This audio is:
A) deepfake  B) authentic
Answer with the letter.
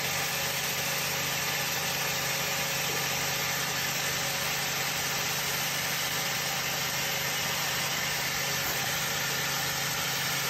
B